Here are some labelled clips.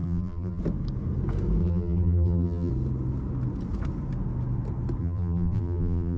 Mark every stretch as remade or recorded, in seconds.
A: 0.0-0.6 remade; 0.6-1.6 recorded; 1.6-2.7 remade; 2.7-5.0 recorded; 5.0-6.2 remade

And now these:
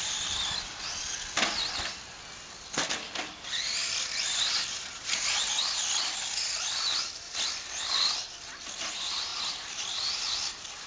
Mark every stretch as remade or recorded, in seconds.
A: 0.0-3.8 recorded; 3.8-5.5 remade; 5.5-10.9 recorded

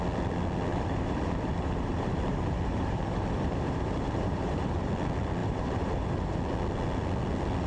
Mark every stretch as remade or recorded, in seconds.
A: 0.0-0.7 recorded; 0.7-4.9 remade; 4.9-5.4 recorded; 5.4-6.4 remade; 6.4-7.7 recorded

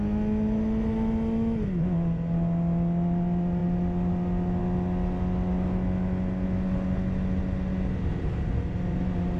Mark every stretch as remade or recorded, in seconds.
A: 0.0-9.4 recorded

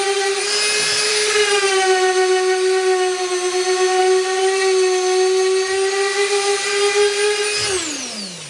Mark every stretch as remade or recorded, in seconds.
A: 0.0-8.5 recorded

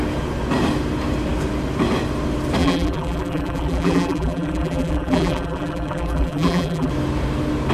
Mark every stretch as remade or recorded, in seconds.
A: 0.0-2.6 recorded; 2.6-6.9 remade; 6.9-7.7 recorded

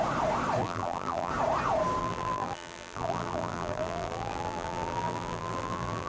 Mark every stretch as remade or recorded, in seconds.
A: 0.0-0.6 recorded; 0.6-1.3 remade; 1.3-2.0 recorded; 2.0-6.1 remade